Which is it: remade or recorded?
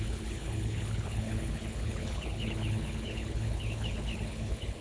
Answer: remade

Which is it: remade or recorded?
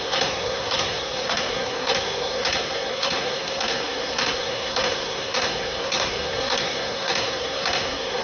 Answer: remade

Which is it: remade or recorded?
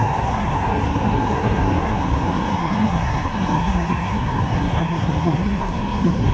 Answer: remade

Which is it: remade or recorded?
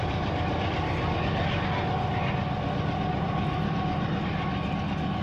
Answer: recorded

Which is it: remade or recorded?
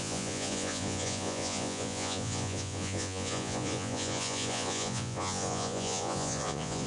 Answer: remade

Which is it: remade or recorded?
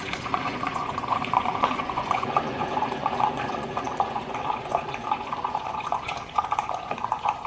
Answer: remade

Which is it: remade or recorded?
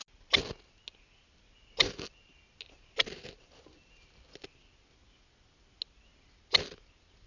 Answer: recorded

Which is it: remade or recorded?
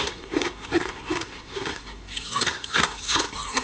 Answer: remade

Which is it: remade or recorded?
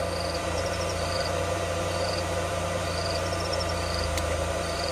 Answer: remade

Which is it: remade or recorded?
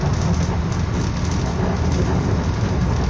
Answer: recorded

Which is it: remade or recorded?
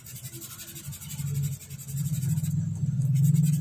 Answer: recorded